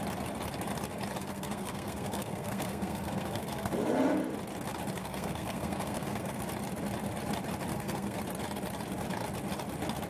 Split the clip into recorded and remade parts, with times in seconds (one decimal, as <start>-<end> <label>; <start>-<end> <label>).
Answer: 0.0-1.2 recorded; 1.2-3.7 remade; 3.7-5.0 recorded; 5.0-6.4 remade; 6.4-7.7 recorded; 7.7-8.2 remade; 8.2-10.1 recorded